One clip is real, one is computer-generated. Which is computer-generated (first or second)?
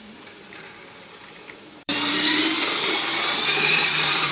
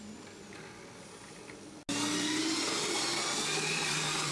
first